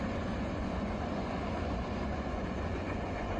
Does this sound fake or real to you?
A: fake